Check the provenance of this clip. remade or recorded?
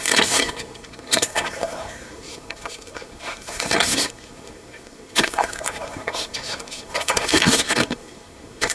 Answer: remade